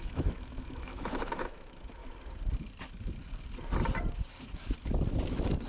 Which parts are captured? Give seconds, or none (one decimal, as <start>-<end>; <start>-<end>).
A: 2.0-5.7